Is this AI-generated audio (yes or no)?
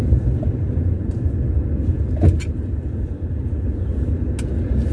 no